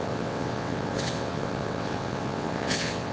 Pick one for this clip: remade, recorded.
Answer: remade